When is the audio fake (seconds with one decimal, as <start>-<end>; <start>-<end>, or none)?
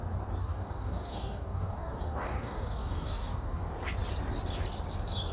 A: 0.4-3.6